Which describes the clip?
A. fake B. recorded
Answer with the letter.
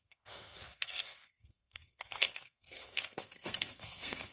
A